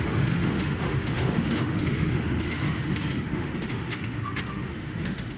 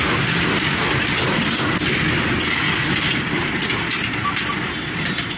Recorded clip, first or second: second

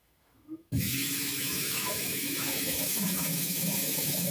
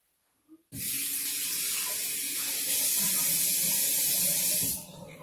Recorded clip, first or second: second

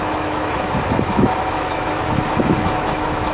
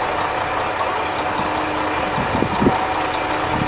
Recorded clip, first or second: second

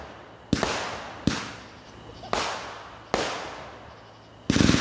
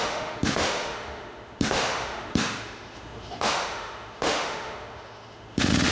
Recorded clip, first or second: first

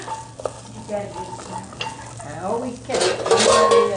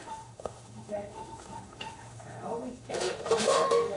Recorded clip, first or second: first